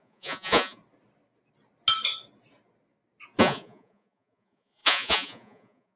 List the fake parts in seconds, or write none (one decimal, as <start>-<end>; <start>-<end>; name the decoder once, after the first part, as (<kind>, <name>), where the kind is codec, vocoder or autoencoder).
0.0-0.8 (vocoder, Vocos); 3.4-6.0